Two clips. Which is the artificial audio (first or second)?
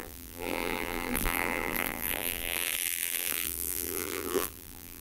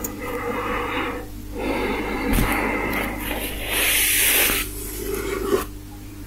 first